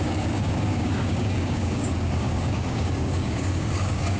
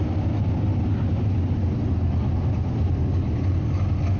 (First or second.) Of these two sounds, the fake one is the first